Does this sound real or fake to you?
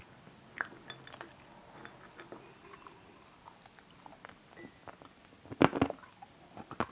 real